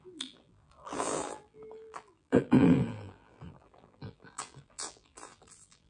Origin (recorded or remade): remade